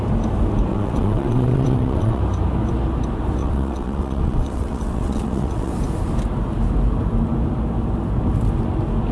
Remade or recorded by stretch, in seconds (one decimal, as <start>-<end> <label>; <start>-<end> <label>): 0.0-0.7 recorded; 0.7-2.2 remade; 2.2-3.4 recorded; 3.4-5.7 remade; 5.7-9.1 recorded